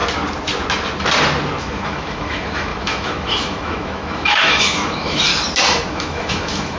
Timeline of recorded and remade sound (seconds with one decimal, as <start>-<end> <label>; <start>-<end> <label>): 0.0-1.6 recorded; 1.6-5.3 remade; 5.3-5.9 recorded; 5.9-6.8 remade